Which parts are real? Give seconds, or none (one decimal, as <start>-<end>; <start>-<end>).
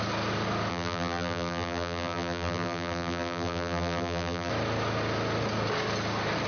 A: 0.0-0.7; 4.5-6.5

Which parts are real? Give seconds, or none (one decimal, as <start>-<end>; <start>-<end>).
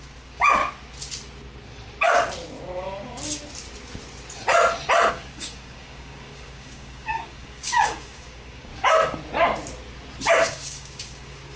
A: 0.6-5.1; 8.7-10.3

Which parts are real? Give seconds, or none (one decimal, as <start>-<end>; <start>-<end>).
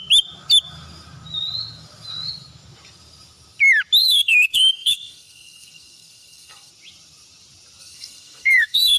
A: 0.0-4.0; 6.7-7.8